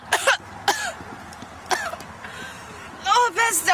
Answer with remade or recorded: recorded